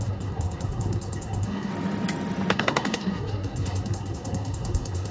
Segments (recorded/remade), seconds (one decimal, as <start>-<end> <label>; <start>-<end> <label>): 0.0-1.7 remade; 1.7-2.5 recorded; 2.5-5.1 remade